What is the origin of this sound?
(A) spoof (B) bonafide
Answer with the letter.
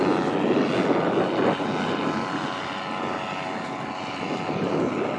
B